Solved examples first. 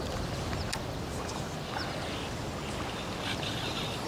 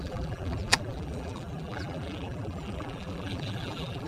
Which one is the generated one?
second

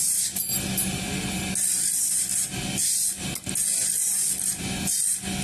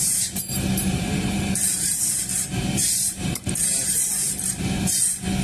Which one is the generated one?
second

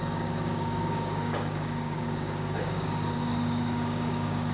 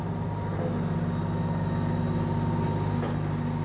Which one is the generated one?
first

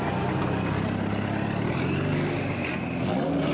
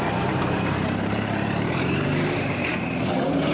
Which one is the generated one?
second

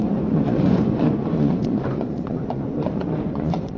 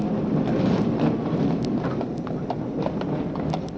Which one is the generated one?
first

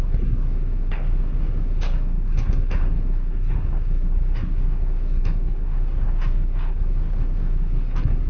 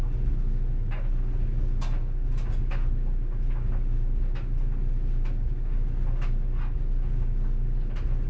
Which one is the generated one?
first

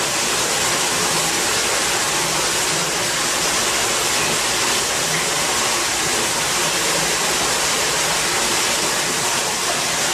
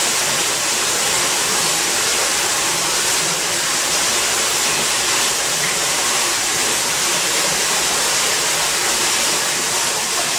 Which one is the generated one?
second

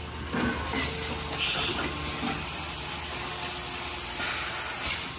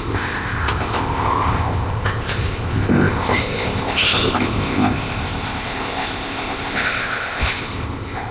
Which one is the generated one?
second